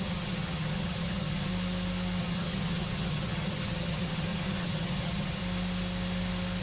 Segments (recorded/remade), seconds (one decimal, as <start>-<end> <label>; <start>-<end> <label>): 0.0-1.5 remade; 1.5-2.2 recorded; 2.2-5.4 remade; 5.4-6.6 recorded